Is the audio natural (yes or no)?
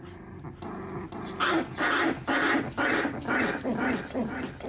yes